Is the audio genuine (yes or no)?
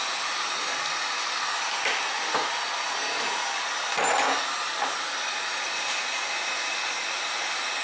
yes